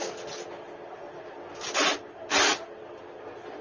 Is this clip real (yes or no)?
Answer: yes